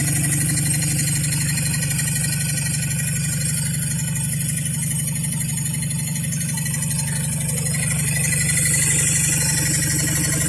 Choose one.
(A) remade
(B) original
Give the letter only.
B